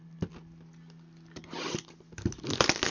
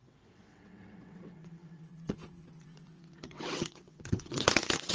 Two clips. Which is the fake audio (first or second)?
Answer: second